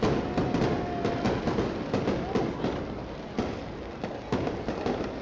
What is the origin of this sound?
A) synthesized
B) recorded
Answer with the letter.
B